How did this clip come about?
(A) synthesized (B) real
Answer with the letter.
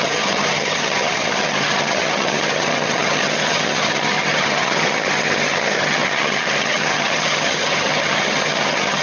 A